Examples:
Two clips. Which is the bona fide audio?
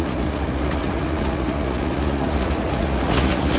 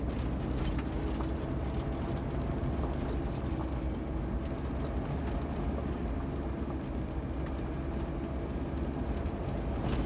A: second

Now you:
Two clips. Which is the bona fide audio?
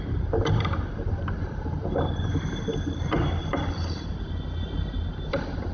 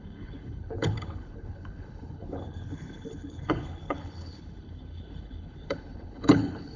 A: first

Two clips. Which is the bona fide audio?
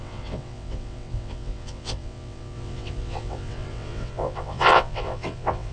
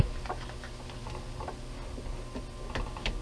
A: second